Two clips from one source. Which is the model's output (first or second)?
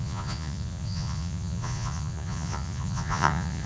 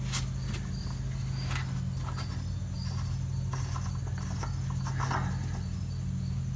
first